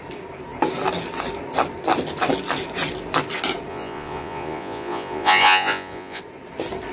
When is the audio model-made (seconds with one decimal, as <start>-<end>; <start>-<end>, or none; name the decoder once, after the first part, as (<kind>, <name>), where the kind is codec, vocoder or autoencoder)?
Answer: 3.7-6.2 (vocoder, Vocos)